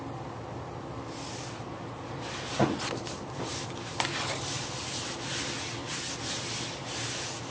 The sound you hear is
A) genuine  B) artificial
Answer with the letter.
A